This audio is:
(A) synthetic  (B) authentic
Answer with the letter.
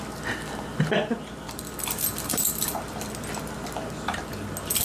B